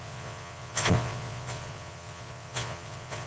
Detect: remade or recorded remade